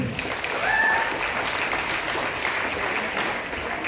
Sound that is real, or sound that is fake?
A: real